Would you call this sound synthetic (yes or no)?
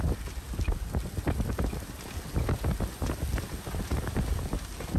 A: no